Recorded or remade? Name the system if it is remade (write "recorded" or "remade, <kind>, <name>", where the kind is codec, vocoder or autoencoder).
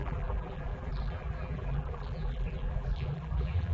remade, vocoder, BigVGAN v2